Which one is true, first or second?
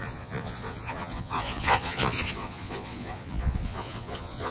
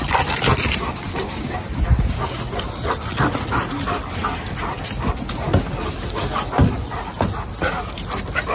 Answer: second